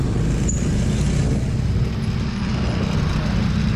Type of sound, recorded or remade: recorded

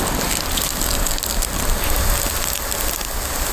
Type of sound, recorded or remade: recorded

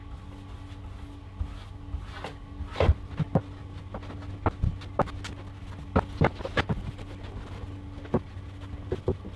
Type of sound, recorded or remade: recorded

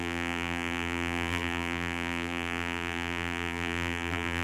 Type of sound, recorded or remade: remade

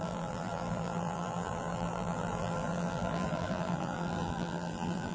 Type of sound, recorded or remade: remade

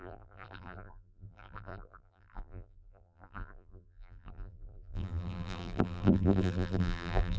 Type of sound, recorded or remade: remade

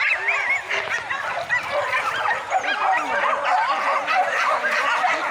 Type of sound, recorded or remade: recorded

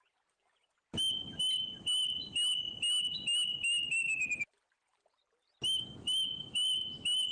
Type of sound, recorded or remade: recorded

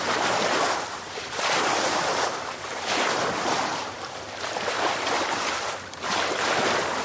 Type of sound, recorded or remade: remade